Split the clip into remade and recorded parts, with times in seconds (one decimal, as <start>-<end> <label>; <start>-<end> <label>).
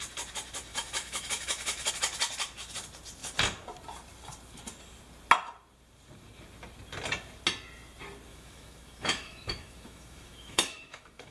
0.0-0.7 recorded; 0.7-1.9 remade; 1.9-8.3 recorded; 8.3-11.3 remade